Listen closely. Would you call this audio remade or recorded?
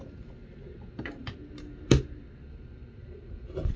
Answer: remade